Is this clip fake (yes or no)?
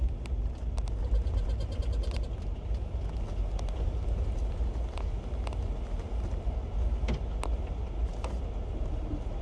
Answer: no